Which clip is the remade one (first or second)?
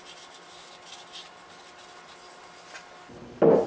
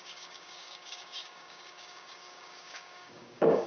second